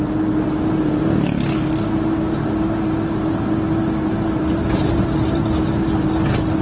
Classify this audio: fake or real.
real